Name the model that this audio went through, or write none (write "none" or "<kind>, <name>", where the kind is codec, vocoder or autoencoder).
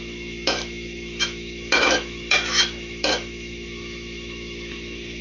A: autoencoder, DAC-VAE